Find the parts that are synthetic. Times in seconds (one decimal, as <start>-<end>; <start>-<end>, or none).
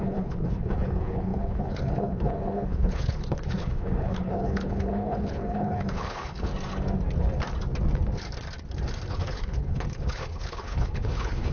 0.0-6.5; 9.1-11.5